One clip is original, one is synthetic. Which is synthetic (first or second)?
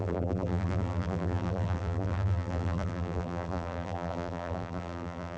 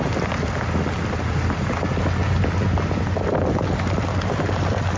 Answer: first